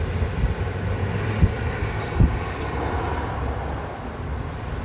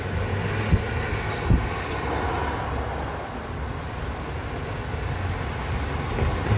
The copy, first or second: first